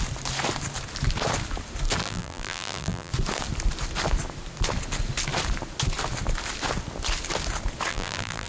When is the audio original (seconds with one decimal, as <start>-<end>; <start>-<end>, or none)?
0.0-2.0; 3.1-7.9